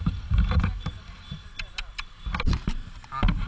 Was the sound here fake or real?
real